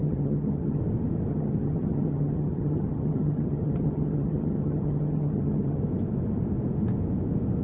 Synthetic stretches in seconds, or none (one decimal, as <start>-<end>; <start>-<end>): 0.0-0.8; 1.3-5.8